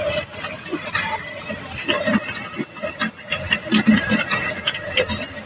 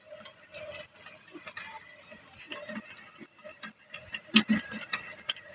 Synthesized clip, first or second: first